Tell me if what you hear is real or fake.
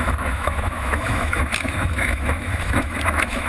fake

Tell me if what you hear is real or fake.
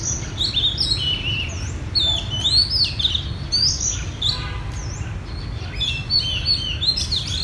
real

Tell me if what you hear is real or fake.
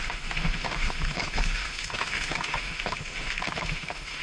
fake